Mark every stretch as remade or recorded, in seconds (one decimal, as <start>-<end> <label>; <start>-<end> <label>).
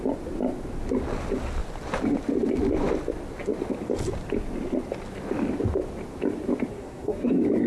0.0-6.7 recorded; 6.7-7.3 remade; 7.3-7.7 recorded